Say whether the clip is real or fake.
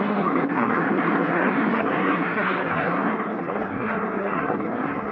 fake